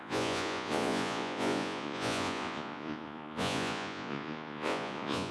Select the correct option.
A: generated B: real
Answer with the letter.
A